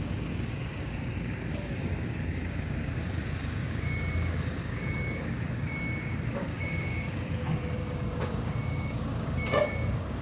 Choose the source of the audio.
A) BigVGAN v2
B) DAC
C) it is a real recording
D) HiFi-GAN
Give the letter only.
B